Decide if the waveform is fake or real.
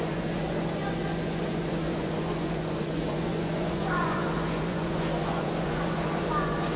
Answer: fake